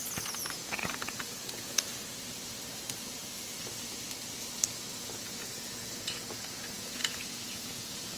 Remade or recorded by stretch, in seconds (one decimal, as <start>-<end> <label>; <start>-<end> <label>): 0.0-1.9 remade; 1.9-5.0 recorded; 5.0-8.2 remade